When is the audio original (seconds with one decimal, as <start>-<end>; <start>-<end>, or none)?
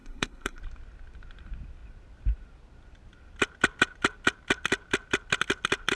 0.6-6.0